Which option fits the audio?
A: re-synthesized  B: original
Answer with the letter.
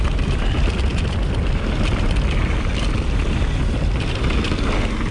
B